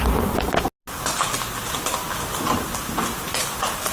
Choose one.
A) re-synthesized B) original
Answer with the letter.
B